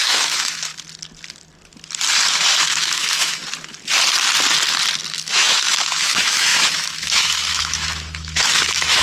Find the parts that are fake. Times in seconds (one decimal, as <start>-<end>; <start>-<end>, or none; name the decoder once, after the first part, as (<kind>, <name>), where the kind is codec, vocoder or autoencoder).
0.0-0.7 (autoencoder, DAC-VAE); 2.6-3.4; 5.1-9.0